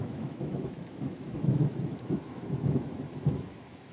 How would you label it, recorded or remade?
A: remade